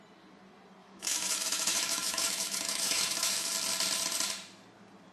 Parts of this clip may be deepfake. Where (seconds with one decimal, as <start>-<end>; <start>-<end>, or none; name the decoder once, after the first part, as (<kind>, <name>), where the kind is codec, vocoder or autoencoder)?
0.8-3.5 (autoencoder, DAC-VAE)